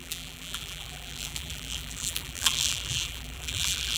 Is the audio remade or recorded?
remade